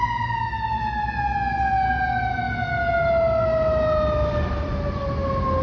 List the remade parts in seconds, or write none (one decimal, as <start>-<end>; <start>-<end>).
none